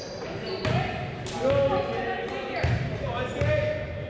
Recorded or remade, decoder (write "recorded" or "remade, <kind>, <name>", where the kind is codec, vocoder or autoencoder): recorded